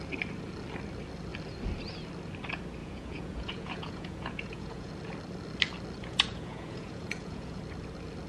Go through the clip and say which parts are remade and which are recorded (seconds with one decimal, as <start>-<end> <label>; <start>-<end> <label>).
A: 0.0-2.8 recorded; 2.8-4.9 remade; 4.9-6.0 recorded; 6.0-7.6 remade; 7.6-8.3 recorded